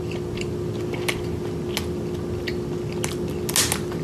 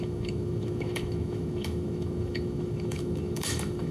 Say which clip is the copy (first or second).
second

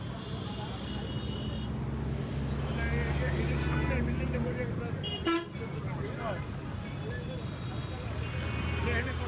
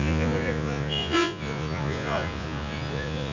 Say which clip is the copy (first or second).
second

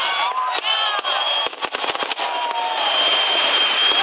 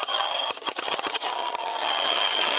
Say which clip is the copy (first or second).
second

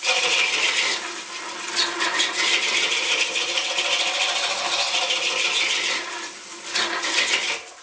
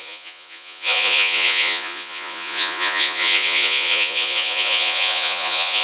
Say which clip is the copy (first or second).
second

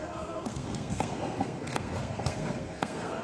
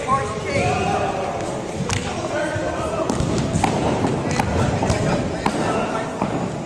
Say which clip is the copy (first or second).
first